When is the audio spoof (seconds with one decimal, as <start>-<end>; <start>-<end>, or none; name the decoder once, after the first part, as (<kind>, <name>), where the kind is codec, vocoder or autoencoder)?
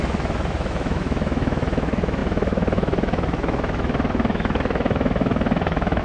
0.0-6.0 (autoencoder, DAC-VAE)